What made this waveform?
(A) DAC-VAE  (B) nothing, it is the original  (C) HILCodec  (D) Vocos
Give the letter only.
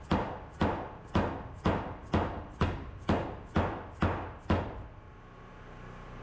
B